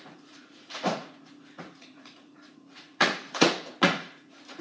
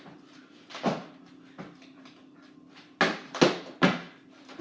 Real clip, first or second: second